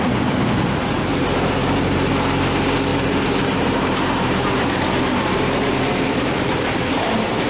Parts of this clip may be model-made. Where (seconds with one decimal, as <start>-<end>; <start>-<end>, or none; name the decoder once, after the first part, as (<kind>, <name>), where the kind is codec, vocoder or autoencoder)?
1.1-2.1 (vocoder, BigVGAN v2); 2.9-7.5